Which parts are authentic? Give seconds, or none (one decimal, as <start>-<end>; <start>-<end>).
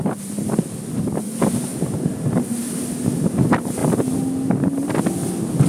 0.0-1.7; 2.7-5.7